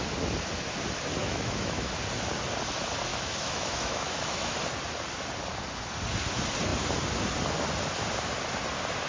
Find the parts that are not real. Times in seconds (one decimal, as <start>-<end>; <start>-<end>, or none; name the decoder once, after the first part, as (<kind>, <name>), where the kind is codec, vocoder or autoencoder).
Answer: 1.2-1.9 (autoencoder, DAC-VAE); 3.1-4.6